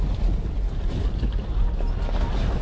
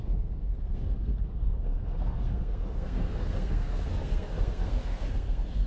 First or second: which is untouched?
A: first